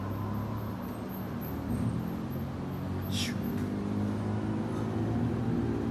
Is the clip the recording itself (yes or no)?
yes